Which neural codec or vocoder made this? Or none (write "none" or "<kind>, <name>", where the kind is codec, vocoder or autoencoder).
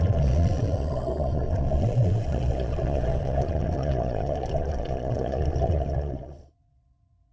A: vocoder, Vocos